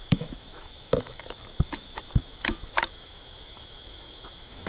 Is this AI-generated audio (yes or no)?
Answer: yes